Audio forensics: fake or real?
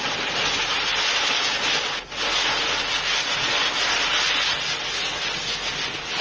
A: real